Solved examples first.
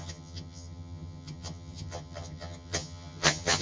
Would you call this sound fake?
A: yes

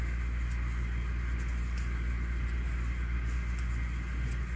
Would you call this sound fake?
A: no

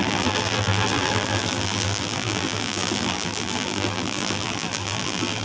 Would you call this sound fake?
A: yes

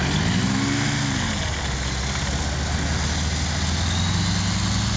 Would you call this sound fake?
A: no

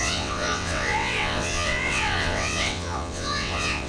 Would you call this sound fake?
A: yes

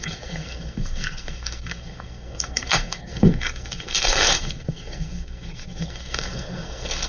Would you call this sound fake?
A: yes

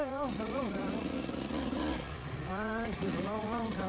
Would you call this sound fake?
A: yes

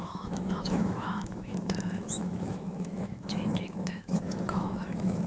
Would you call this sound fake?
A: yes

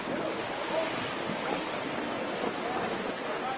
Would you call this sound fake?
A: no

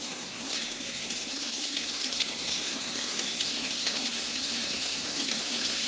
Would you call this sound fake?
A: yes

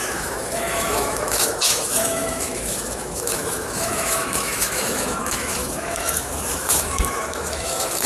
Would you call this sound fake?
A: yes